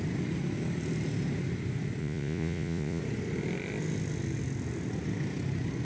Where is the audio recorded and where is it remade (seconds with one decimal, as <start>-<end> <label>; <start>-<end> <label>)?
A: 0.0-2.0 recorded; 2.0-3.0 remade; 3.0-5.8 recorded